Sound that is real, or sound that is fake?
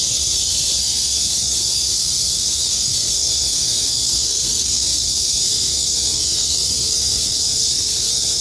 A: fake